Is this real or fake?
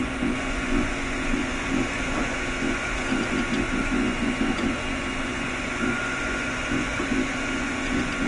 fake